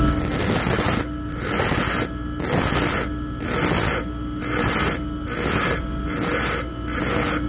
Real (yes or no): yes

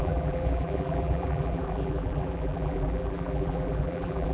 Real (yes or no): no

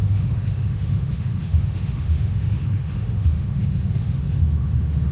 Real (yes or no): no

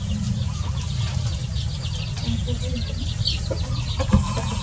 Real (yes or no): yes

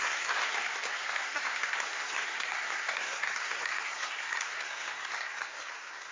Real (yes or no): no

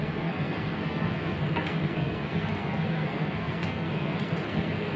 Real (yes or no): no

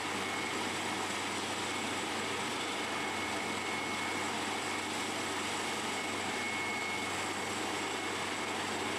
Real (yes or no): yes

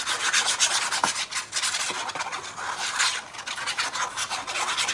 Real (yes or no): yes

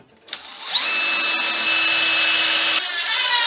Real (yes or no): yes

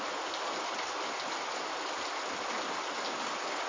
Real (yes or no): yes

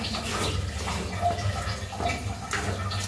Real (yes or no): yes